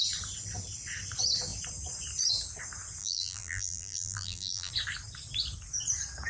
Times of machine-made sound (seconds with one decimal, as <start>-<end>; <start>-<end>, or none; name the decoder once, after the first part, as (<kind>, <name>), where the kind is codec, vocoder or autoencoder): 3.0-4.7 (vocoder, BigVGAN v2)